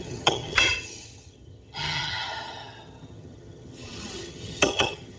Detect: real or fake fake